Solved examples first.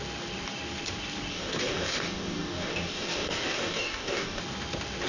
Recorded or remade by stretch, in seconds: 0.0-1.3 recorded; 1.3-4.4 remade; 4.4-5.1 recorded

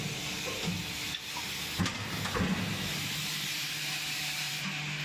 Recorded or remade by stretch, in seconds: 0.0-1.0 recorded; 1.0-1.8 remade; 1.8-2.9 recorded; 2.9-4.5 remade; 4.5-5.0 recorded